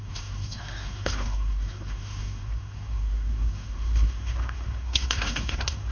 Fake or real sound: fake